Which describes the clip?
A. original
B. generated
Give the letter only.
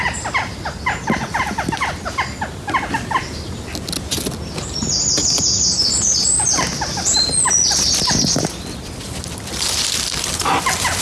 A